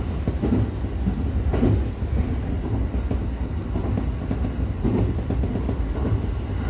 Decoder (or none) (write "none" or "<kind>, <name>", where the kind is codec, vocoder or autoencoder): none